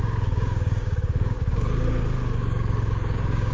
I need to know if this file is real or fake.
fake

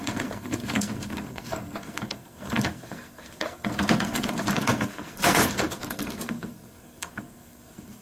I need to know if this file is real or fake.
fake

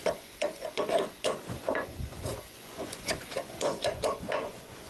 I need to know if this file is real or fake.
fake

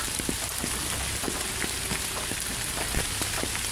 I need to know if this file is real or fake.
real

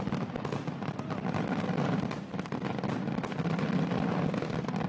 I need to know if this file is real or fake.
real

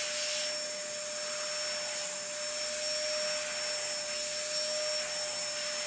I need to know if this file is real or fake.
real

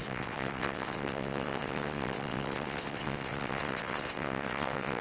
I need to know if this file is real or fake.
fake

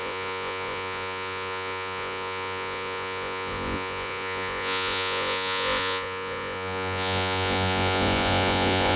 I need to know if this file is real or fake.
fake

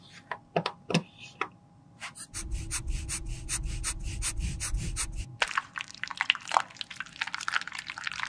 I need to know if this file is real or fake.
real